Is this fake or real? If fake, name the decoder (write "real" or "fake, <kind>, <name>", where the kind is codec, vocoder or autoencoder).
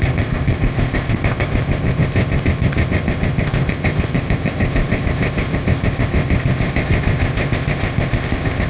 fake, codec, ZipCodec